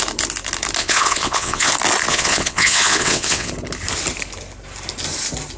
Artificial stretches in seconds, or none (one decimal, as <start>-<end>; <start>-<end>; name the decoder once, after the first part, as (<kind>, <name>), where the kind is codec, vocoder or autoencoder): 0.8-1.7 (vocoder, WaveNeXt); 2.1-3.5